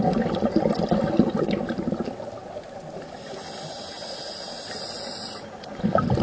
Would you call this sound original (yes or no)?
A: yes